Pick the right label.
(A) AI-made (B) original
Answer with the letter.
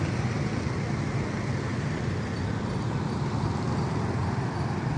B